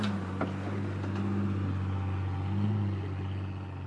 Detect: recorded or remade recorded